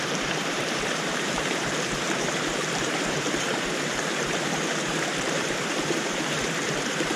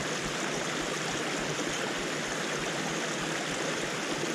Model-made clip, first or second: first